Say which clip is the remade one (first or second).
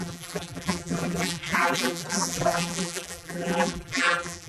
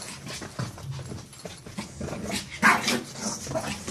first